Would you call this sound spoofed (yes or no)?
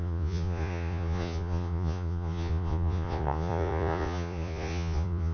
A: yes